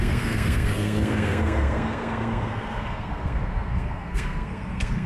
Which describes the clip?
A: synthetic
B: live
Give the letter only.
A